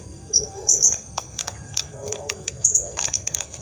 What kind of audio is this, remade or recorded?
remade